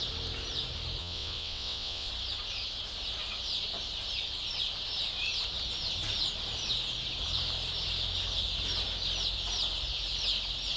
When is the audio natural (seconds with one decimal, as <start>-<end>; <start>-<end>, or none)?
0.0-1.0; 2.1-10.8